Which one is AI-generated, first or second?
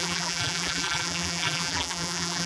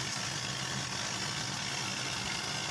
first